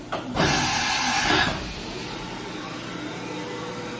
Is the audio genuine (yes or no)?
yes